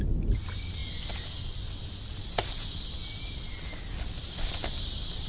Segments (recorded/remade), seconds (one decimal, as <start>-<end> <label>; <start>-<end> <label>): 0.0-0.8 remade; 0.8-4.0 recorded; 4.0-5.3 remade